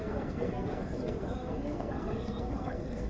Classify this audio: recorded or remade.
remade